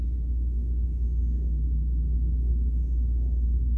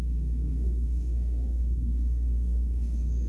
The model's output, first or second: second